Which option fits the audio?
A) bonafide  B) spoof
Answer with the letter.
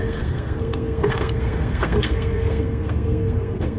B